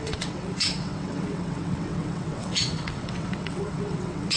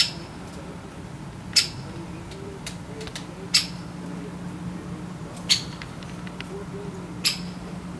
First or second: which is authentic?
second